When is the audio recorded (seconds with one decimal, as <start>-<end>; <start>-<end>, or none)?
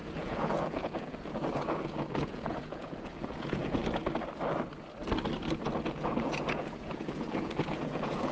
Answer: 3.8-5.9